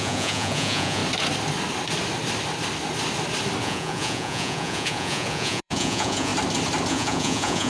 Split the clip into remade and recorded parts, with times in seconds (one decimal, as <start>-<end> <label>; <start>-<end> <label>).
0.0-1.0 remade; 1.0-3.6 recorded; 3.6-6.3 remade; 6.3-6.9 recorded; 6.9-7.7 remade